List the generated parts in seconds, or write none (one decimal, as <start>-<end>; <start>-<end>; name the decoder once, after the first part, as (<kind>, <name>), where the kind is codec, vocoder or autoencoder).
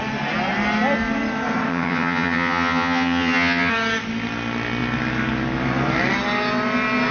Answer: 1.7-3.7 (vocoder, HiFi-GAN)